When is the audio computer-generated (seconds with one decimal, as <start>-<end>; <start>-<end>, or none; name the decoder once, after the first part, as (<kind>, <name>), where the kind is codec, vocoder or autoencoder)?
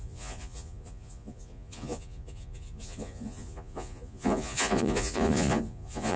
0.0-6.2 (vocoder, Vocos)